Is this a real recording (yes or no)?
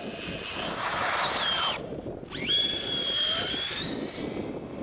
yes